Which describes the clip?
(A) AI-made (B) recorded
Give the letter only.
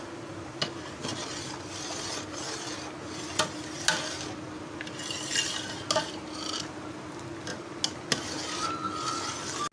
B